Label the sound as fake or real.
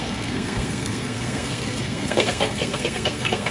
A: fake